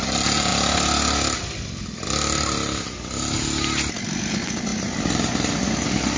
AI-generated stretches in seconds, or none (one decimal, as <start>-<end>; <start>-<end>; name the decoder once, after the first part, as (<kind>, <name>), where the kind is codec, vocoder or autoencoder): none